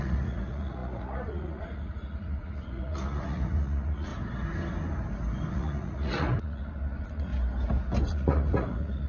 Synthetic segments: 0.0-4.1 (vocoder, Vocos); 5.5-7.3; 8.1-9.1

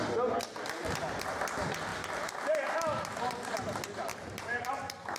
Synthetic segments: 4.1-4.7 (vocoder, BigVGAN v2)

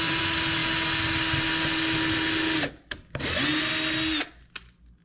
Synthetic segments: none

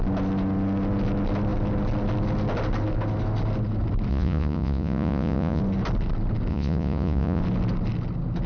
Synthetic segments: 4.1-5.6 (vocoder, Vocos); 6.5-7.4

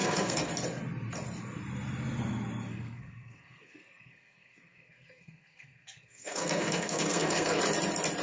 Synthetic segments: 0.0-0.5 (codec, SNAC); 2.7-7.6

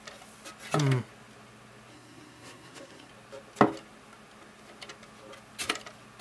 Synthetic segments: 1.9-3.1 (codec, SNAC)